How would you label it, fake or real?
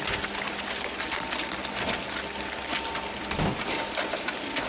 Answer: real